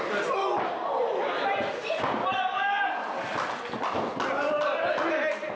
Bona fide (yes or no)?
yes